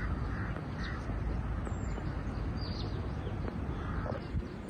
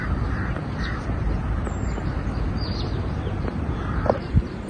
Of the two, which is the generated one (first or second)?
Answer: second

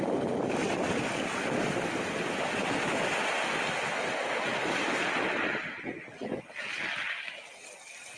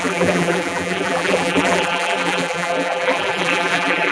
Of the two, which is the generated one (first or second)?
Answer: second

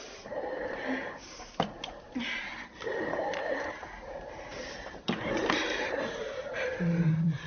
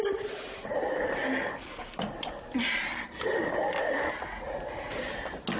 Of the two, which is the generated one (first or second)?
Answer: first